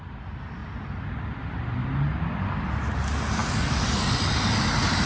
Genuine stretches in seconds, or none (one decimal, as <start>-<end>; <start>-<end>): 0.0-5.1